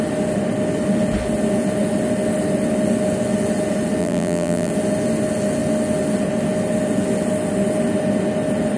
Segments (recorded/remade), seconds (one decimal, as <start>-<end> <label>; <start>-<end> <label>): 0.0-4.0 recorded; 4.0-4.7 remade; 4.7-8.8 recorded